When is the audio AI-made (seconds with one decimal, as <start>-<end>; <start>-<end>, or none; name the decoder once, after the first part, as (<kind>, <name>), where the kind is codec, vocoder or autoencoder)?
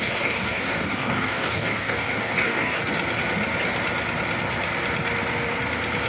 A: 0.0-2.8 (codec, DAC)